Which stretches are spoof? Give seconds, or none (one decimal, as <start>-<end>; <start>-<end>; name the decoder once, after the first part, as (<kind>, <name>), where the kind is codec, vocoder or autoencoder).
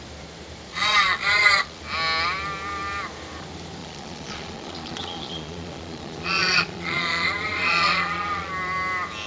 0.7-1.8 (vocoder, Vocos); 3.8-8.5